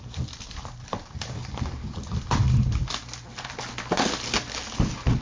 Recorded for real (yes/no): yes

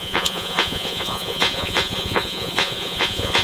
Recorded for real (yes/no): no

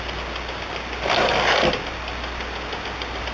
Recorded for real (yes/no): yes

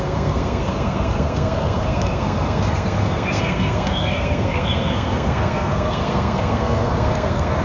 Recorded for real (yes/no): no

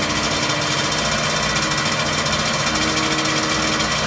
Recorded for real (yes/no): yes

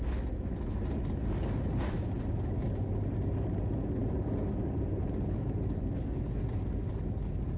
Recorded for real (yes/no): yes